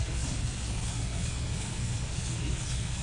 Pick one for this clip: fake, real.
fake